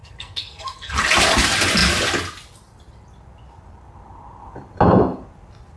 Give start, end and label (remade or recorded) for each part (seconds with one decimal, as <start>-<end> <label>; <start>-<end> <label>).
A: 0.0-1.0 remade; 1.0-5.8 recorded